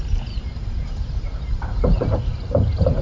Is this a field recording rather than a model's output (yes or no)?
no